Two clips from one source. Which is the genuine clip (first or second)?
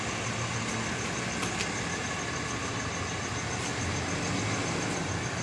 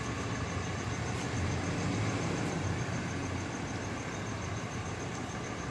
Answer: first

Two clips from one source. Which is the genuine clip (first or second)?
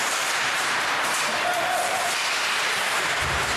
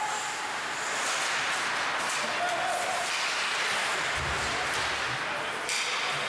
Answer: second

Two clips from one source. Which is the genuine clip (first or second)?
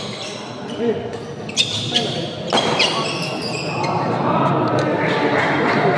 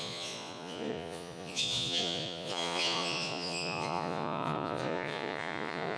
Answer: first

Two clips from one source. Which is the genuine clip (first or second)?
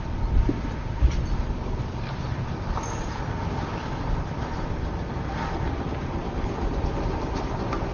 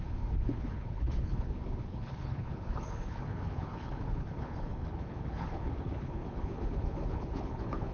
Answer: first